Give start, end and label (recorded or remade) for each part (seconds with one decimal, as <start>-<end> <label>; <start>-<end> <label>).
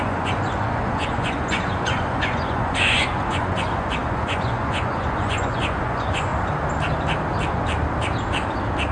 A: 0.0-6.3 remade; 6.3-8.9 recorded